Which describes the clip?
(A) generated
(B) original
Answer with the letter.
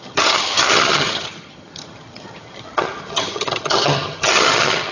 A